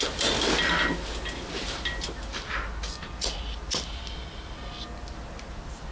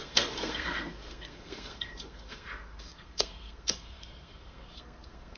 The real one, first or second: first